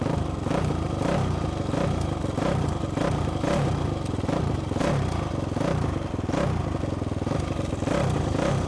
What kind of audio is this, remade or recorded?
recorded